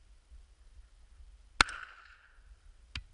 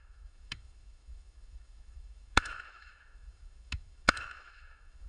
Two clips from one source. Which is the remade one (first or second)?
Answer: second